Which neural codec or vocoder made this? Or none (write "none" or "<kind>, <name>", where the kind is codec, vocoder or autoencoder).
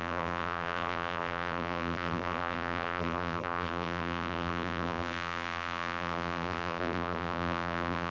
vocoder, BigVGAN v2